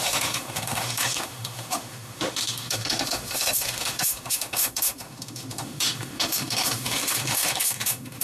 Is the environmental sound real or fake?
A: fake